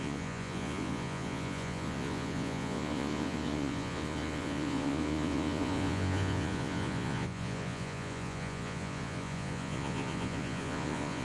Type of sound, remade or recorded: remade